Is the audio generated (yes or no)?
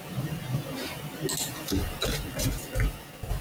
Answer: no